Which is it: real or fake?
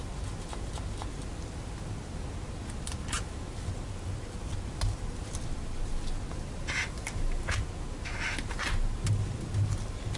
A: real